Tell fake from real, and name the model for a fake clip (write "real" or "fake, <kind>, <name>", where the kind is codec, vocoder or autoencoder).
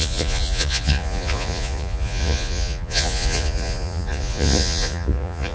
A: fake, vocoder, Vocos